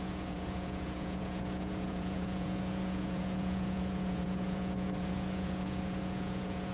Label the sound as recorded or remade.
remade